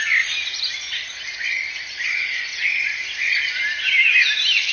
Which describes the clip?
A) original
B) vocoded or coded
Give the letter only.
A